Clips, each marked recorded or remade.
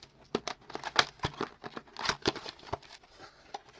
recorded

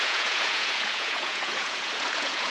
remade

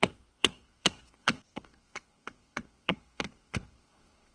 remade